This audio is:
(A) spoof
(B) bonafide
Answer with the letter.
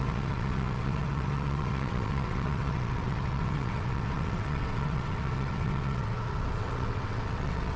A